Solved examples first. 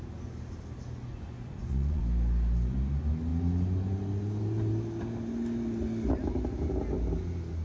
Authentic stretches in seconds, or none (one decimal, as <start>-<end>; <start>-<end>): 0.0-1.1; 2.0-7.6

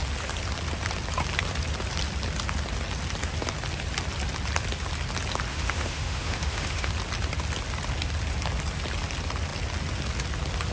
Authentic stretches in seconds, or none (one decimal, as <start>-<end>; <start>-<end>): 0.0-5.5; 6.9-10.7

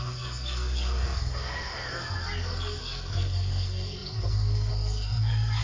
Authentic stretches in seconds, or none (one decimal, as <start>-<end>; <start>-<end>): none